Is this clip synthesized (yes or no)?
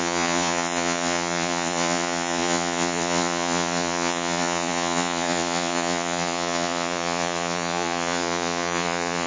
yes